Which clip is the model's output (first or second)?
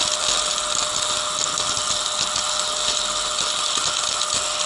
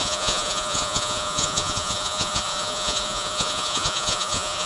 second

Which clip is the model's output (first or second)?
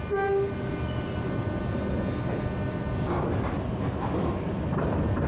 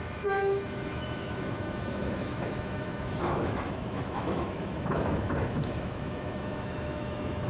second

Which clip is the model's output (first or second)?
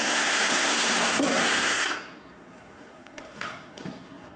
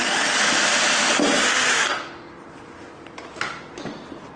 first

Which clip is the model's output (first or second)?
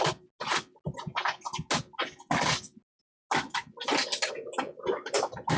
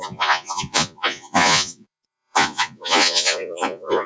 second